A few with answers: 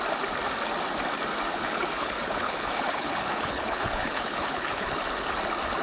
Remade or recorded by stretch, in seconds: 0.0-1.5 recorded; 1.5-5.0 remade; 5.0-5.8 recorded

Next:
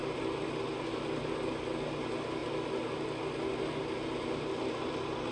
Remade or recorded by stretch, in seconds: 0.0-5.3 recorded

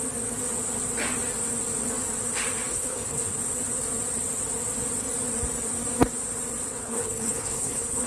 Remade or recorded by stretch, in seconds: 0.0-2.7 recorded; 2.7-3.4 remade; 3.4-6.7 recorded; 6.7-8.1 remade

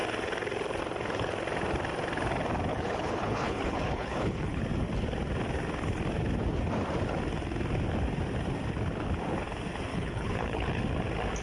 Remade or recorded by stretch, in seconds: 0.0-2.7 recorded; 2.7-4.6 remade; 4.6-9.9 recorded; 9.9-10.8 remade; 10.8-11.4 recorded

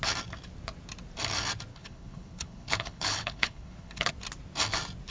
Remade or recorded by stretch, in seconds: 0.0-1.7 recorded; 1.7-4.1 remade; 4.1-5.1 recorded

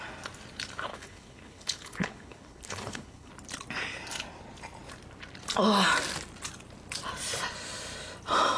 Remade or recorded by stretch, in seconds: 0.0-0.9 recorded; 0.9-3.3 remade; 3.3-8.6 recorded

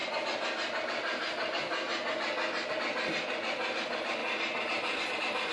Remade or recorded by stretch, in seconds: 0.0-5.5 recorded